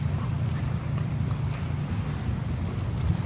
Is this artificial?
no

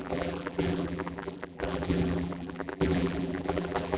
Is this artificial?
yes